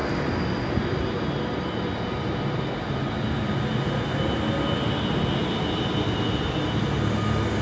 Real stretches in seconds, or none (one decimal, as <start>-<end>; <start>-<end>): 0.0-7.6